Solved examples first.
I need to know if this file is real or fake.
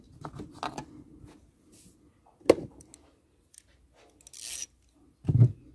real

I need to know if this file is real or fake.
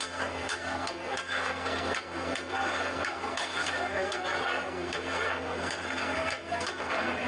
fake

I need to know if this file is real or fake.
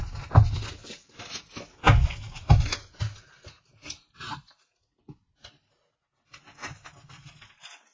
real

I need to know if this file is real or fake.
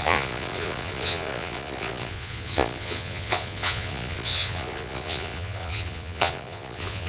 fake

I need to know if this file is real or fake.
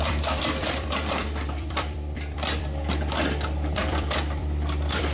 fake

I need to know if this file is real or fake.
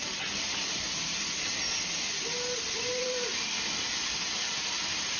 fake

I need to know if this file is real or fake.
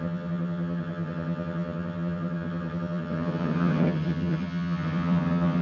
fake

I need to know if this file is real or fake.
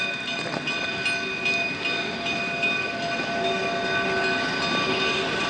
real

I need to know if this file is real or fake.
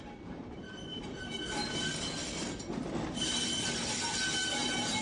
real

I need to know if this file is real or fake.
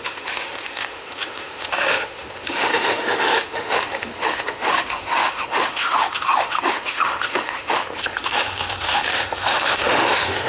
fake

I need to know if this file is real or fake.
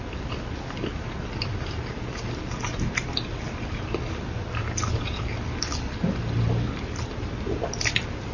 fake